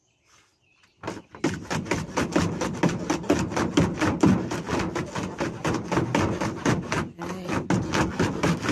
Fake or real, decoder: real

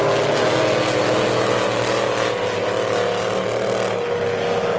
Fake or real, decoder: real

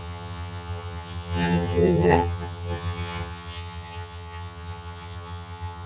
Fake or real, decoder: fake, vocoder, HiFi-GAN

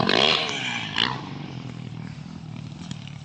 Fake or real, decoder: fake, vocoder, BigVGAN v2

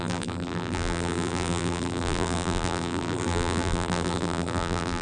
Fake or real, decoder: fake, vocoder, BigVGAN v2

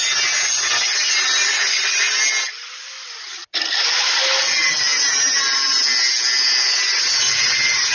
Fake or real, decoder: real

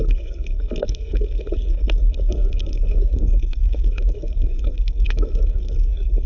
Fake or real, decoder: fake, codec, SNAC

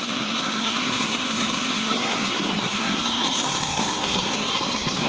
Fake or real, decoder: fake, codec, SNAC